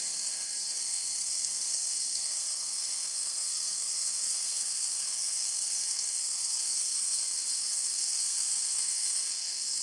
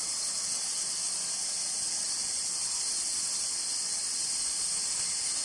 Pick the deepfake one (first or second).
first